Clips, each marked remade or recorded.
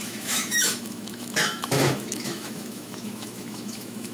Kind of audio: remade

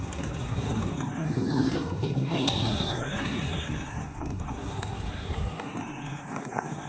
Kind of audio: remade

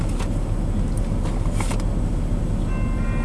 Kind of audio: recorded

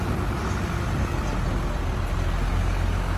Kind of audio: recorded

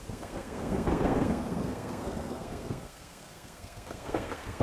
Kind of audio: remade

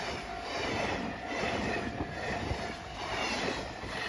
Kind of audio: recorded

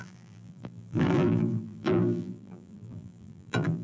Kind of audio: remade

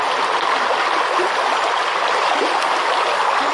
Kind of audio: recorded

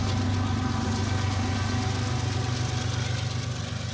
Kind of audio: recorded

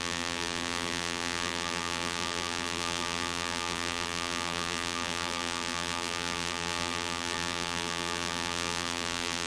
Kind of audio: remade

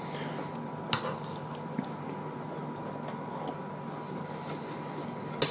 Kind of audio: recorded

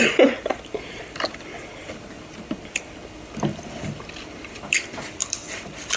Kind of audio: recorded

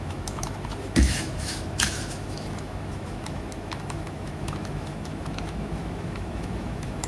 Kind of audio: remade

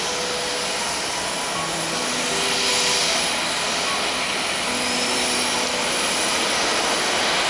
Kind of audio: recorded